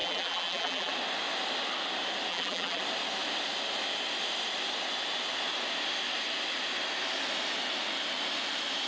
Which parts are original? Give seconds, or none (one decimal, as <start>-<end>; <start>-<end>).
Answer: 0.9-2.3; 2.8-8.9